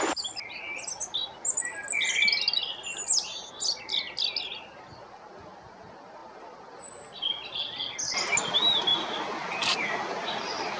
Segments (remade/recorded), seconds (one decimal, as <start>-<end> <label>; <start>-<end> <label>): 0.0-10.8 recorded